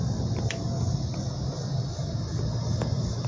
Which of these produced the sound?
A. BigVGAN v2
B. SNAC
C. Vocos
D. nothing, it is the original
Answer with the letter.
D